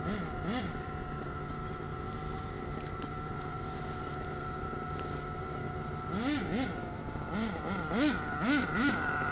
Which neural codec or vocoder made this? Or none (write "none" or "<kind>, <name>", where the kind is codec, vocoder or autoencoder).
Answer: none